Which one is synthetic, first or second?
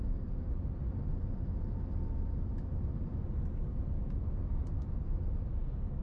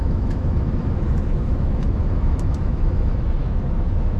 second